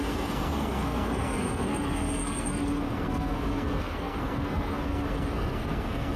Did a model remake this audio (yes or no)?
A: yes